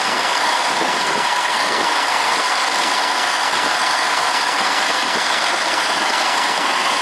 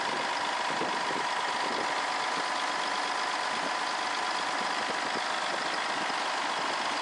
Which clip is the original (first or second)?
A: second